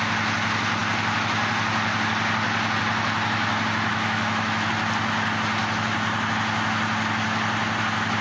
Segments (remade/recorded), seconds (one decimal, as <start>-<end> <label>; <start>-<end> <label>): 0.0-3.9 recorded; 3.9-4.7 remade; 4.7-8.2 recorded